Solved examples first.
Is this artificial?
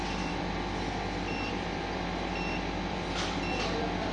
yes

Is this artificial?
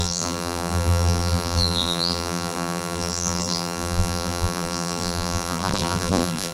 yes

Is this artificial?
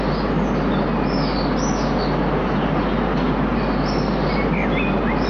no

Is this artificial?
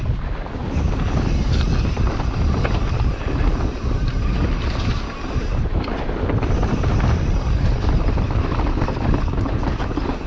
no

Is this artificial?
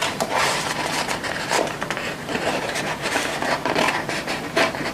yes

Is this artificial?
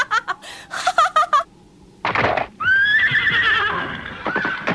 no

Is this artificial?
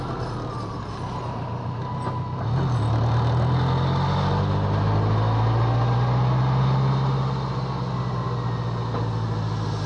no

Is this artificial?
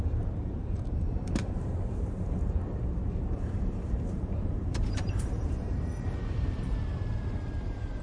yes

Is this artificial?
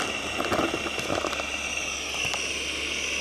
no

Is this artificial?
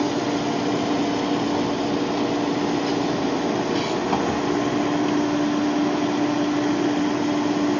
no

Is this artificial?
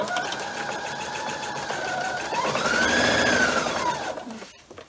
yes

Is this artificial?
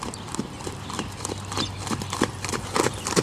no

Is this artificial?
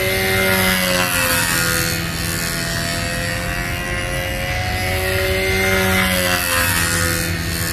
no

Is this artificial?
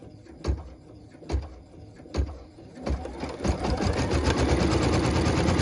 no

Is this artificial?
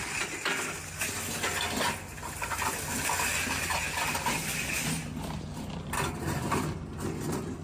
no